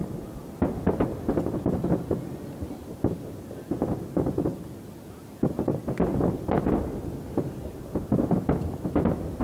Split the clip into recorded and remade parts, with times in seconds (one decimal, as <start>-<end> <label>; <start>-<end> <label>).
0.0-9.4 recorded